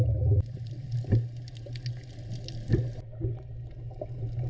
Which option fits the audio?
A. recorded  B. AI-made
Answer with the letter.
A